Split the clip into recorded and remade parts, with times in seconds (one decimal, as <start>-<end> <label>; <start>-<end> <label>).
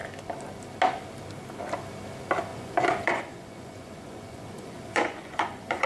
0.0-2.5 recorded; 2.5-5.9 remade